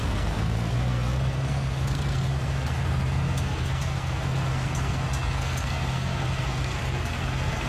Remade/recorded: remade